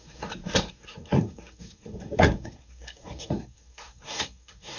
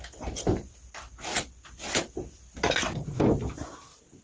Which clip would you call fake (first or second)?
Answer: first